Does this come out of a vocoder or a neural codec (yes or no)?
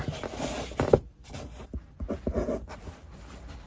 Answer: no